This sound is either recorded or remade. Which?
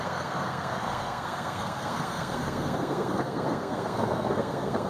remade